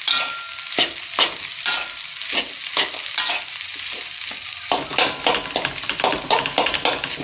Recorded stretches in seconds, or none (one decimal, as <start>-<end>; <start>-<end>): 0.0-7.2